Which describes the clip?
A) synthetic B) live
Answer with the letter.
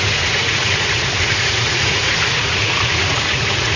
A